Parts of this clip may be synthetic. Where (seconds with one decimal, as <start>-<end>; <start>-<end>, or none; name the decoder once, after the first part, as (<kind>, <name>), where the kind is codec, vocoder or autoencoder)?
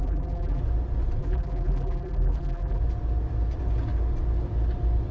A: 0.0-0.6 (vocoder, BigVGAN v2); 1.2-2.8